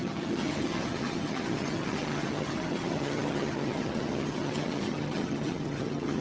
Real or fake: fake